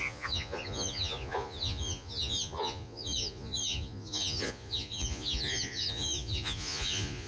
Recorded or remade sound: remade